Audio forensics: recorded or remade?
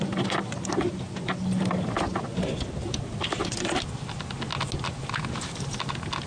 recorded